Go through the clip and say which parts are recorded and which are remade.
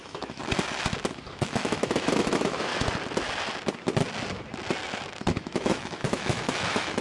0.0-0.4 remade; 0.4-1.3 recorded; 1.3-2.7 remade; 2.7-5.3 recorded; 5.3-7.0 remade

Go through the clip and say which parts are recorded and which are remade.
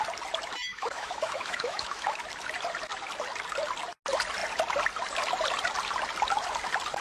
0.0-0.7 recorded; 0.7-2.2 remade; 2.2-7.0 recorded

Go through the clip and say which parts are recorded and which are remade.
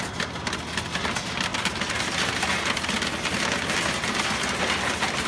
0.0-5.3 recorded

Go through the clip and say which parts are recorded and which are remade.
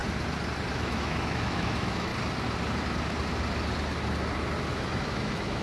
0.0-0.7 recorded; 0.7-2.1 remade; 2.1-4.7 recorded; 4.7-5.6 remade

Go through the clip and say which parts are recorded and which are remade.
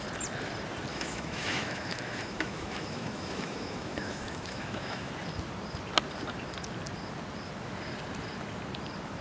0.0-0.9 recorded; 0.9-5.1 remade; 5.1-9.2 recorded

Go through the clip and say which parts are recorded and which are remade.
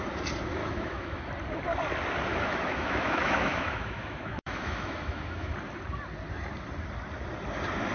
0.0-0.6 recorded; 0.6-1.3 remade; 1.3-2.3 recorded; 2.3-5.5 remade; 5.5-7.9 recorded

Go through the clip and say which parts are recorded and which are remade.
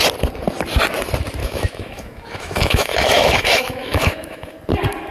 0.0-1.4 recorded; 1.4-4.5 remade; 4.5-5.1 recorded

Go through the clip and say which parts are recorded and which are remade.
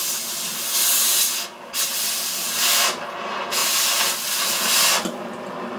0.0-5.8 recorded